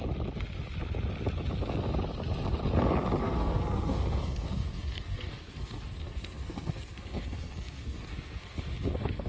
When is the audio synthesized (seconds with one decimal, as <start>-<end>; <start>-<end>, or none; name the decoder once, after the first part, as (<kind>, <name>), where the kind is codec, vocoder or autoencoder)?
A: 3.2-9.3 (codec, SNAC)